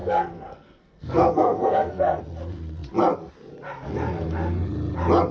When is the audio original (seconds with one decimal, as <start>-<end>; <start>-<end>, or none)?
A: 2.2-5.3